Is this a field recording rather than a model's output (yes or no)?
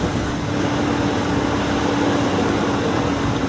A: yes